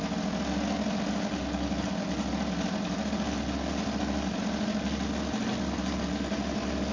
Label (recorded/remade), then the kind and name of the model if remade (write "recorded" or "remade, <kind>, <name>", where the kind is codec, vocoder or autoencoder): recorded